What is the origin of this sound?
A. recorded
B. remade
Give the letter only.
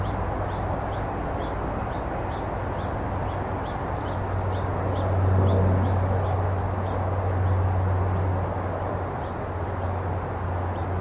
A